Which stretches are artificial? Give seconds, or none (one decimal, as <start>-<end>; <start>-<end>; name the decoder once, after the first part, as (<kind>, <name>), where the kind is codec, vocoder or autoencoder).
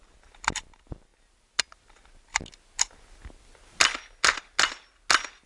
none